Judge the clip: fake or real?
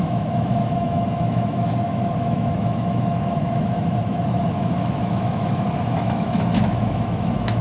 fake